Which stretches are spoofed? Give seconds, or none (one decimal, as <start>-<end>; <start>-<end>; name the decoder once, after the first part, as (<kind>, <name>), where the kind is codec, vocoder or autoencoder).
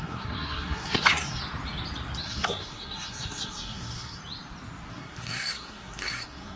0.0-1.4 (codec, SNAC); 2.2-4.2; 4.9-6.6